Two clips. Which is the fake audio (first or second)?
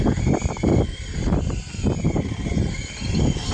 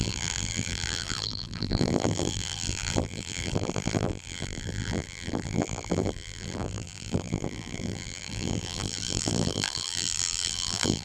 second